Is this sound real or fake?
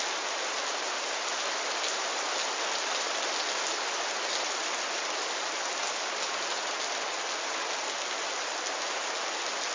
real